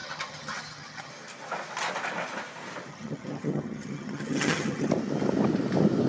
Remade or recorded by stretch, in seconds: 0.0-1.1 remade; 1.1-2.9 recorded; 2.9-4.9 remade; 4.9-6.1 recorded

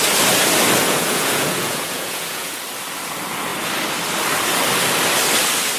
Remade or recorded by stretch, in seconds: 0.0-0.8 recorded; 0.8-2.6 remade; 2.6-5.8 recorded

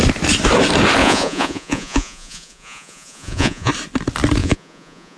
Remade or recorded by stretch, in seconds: 0.0-1.0 recorded; 1.0-3.7 remade; 3.7-4.4 recorded; 4.4-5.2 remade

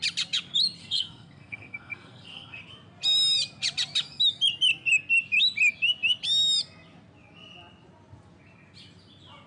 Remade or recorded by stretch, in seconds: 0.0-0.8 recorded; 0.8-2.6 remade; 2.6-9.5 recorded